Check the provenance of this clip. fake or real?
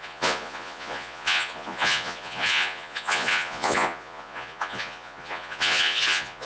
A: fake